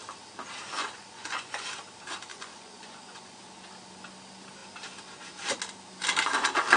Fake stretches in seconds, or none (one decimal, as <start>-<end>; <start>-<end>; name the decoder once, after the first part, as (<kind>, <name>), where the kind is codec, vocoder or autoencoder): 0.8-1.7 (vocoder, Vocos); 2.3-3.4